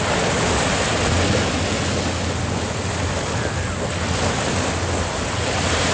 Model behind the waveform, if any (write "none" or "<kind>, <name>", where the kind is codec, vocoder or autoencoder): none